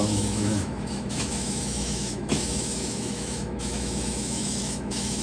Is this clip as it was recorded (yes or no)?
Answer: no